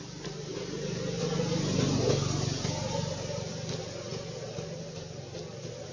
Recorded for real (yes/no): yes